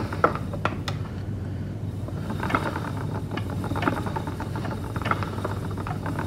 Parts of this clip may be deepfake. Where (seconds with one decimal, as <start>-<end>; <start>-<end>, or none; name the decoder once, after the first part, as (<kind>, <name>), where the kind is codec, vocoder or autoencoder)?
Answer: 1.0-4.8 (vocoder, BigVGAN v2)